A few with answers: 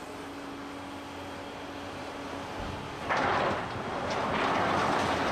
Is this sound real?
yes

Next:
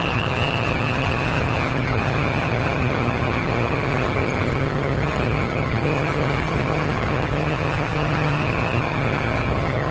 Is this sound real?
no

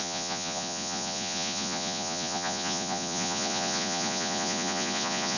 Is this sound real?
no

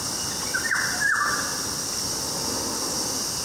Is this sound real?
yes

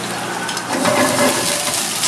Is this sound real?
yes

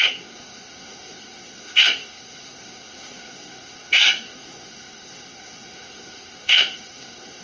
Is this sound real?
no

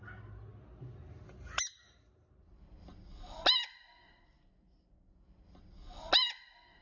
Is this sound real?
yes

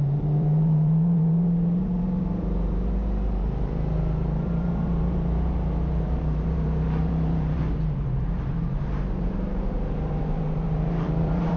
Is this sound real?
no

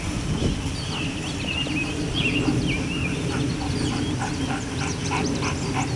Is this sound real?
yes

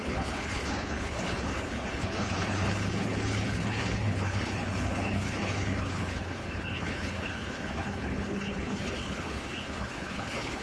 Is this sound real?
no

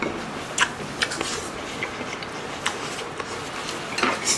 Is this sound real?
yes